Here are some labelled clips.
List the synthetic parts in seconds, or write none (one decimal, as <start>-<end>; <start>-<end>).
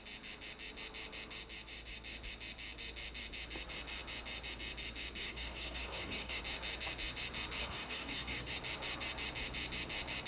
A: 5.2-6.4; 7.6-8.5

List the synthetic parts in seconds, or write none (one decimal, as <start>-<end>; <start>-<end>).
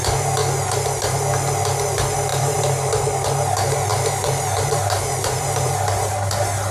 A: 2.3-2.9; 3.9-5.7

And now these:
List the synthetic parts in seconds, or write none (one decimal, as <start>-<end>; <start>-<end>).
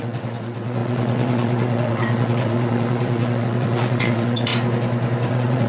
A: 0.0-4.5; 5.3-5.7